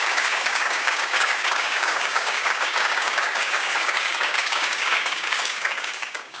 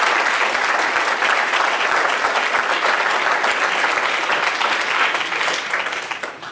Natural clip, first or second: second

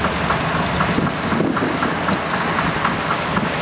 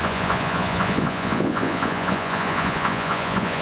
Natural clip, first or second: first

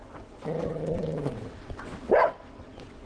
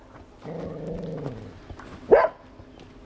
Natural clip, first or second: second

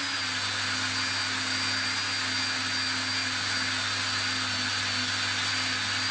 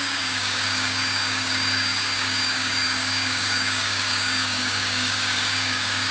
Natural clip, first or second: first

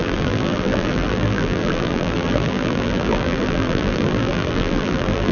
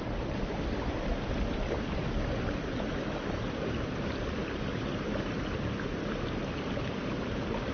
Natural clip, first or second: second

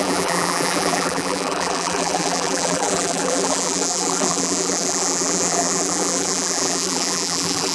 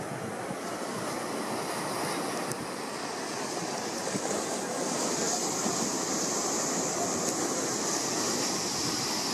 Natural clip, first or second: second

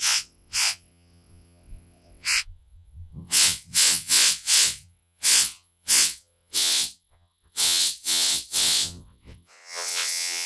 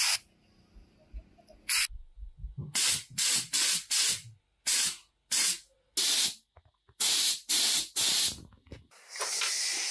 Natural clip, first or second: second